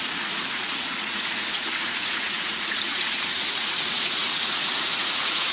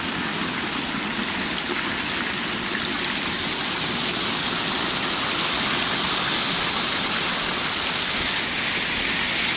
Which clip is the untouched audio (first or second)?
second